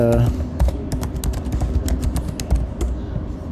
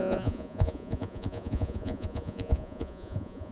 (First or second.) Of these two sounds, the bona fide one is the first